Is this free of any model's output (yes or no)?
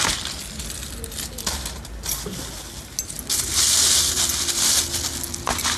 yes